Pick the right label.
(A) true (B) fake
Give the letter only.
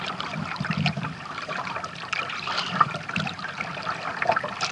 B